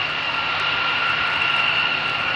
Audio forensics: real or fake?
real